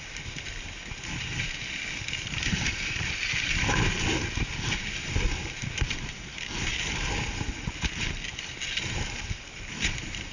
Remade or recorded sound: recorded